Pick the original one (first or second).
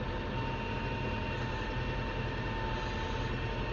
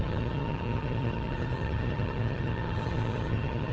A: first